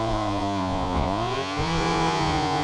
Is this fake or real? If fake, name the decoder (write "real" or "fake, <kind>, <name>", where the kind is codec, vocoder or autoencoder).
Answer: fake, vocoder, Vocos